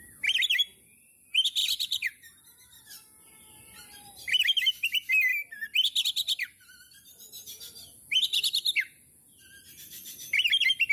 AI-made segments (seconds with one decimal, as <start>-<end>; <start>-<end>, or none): 1.6-2.4